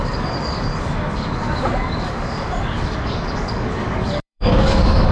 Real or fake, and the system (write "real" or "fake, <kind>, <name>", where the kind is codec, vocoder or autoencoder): fake, codec, DAC